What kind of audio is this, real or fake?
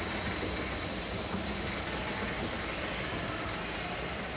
real